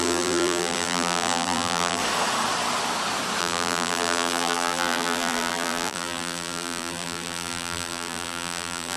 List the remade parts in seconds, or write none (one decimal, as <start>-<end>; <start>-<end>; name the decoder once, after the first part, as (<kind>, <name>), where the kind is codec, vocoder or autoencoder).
0.0-2.0 (vocoder, BigVGAN v2); 3.4-9.0